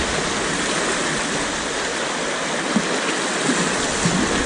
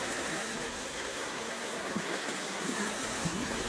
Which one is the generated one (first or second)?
second